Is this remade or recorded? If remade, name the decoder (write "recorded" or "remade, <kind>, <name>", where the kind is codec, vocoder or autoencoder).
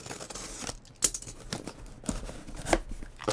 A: recorded